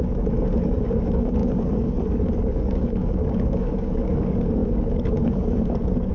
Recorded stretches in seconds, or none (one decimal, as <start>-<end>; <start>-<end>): none